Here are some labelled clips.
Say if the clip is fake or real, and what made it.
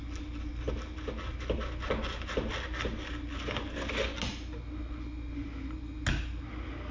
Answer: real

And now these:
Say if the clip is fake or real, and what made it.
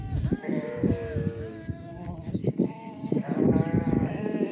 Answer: fake, codec, DAC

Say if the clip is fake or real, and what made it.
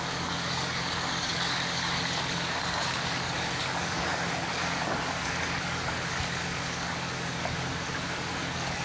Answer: fake, codec, DAC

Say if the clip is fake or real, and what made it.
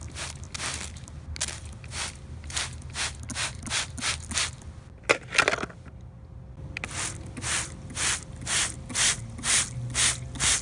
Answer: real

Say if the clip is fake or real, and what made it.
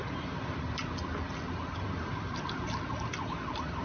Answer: real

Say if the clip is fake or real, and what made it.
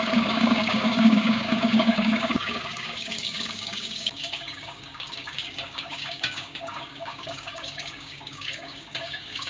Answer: fake, codec, DAC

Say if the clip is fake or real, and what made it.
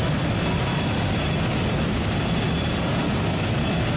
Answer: real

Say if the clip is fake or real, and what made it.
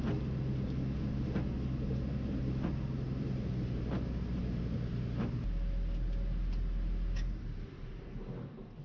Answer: real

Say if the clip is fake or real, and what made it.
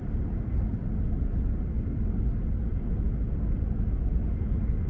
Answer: real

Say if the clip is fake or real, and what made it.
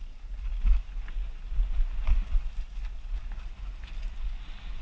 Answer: real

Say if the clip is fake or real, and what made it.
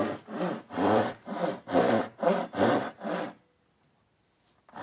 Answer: real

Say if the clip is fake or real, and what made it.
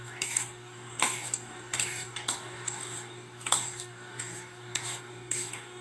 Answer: fake, codec, DAC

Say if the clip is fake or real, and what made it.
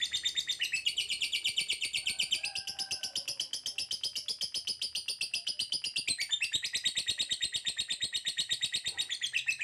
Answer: real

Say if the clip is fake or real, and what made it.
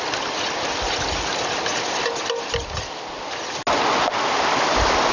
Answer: real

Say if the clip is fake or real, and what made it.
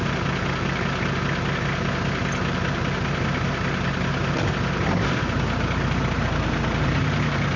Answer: real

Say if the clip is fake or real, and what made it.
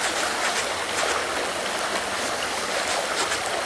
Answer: real